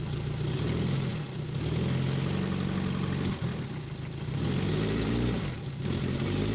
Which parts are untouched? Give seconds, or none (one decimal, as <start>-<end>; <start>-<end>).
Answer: 1.1-4.7